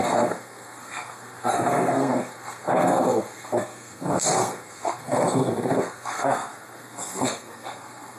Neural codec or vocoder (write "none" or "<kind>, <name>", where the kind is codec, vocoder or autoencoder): codec, SNAC